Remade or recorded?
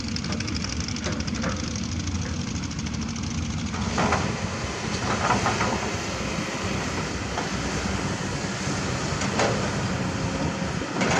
recorded